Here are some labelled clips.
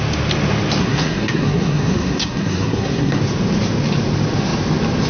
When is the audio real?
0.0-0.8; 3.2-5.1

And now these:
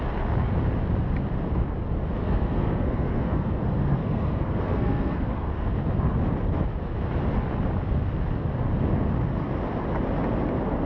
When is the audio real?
0.0-2.2; 5.7-10.9

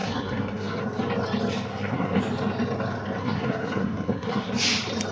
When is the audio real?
0.8-1.7; 2.2-3.2; 4.5-5.1

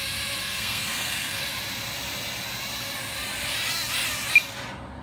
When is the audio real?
0.0-0.4; 1.4-5.0

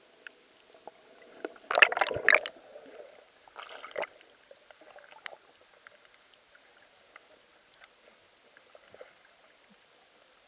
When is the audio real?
0.0-10.5

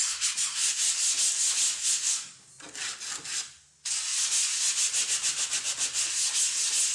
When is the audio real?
0.9-1.8; 2.5-6.9

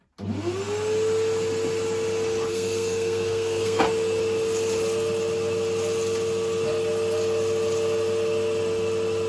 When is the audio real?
0.0-2.5; 3.8-9.3

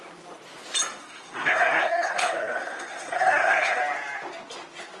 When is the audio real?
0.0-1.0; 3.8-5.0